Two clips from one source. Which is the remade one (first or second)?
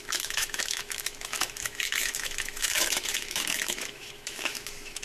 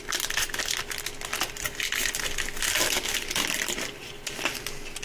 first